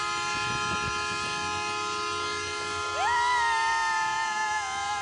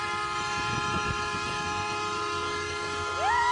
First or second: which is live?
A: first